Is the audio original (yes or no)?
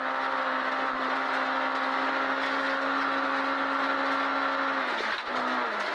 yes